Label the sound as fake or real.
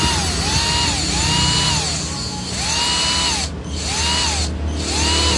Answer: real